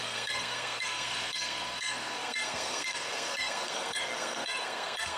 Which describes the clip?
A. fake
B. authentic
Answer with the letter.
A